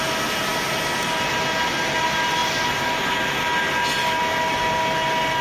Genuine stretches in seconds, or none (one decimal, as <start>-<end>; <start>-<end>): 0.0-5.4